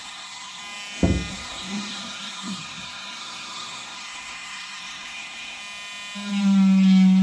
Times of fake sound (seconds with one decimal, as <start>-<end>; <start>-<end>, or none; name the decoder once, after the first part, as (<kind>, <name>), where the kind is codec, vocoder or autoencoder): 0.0-0.6 (codec, SNAC); 1.3-5.6